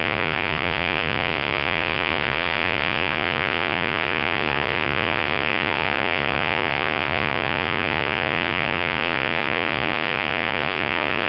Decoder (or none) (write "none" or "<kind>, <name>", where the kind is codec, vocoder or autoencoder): vocoder, Vocos